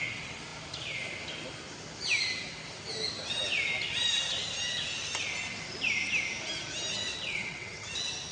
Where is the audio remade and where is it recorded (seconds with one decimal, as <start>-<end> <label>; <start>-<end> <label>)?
0.0-7.1 recorded; 7.1-7.9 remade; 7.9-8.3 recorded

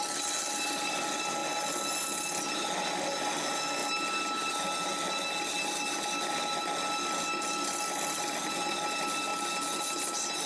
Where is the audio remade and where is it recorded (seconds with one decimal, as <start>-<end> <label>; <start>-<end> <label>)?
0.0-10.5 recorded

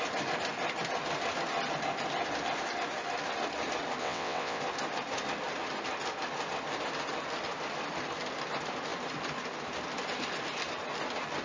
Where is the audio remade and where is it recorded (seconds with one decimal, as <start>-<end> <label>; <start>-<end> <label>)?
0.0-4.0 recorded; 4.0-4.6 remade; 4.6-11.4 recorded

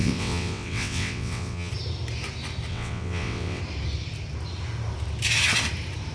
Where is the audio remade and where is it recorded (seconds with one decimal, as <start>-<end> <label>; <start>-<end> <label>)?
0.0-1.7 remade; 1.7-2.7 recorded; 2.7-3.6 remade; 3.6-6.1 recorded

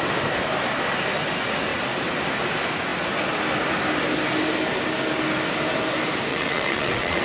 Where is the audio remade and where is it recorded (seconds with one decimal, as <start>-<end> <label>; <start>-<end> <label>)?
0.0-6.3 recorded; 6.3-7.2 remade

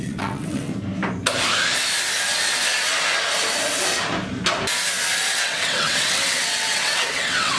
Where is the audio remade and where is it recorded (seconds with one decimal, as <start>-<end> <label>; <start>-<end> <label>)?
0.0-0.7 remade; 0.7-5.3 recorded; 5.3-7.6 remade

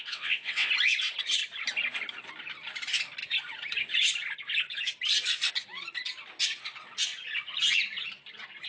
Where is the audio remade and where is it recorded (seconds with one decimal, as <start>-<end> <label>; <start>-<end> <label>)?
0.0-0.7 remade; 0.7-8.7 recorded

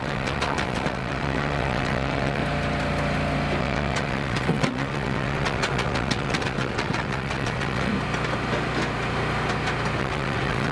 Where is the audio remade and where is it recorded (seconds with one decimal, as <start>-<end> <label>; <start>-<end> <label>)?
0.0-2.4 remade; 2.4-3.6 recorded; 3.6-7.9 remade; 7.9-10.0 recorded; 10.0-10.7 remade